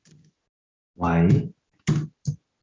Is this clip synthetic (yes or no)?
no